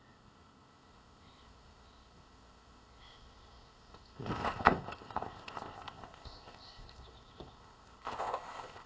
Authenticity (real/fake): fake